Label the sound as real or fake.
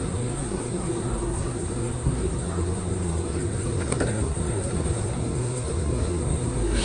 fake